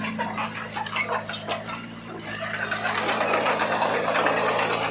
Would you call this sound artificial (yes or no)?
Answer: no